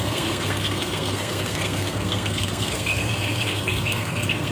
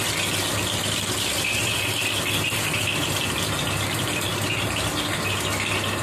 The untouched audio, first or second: second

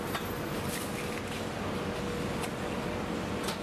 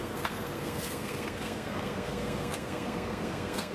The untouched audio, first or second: first